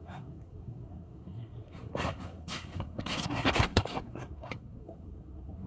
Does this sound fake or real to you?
fake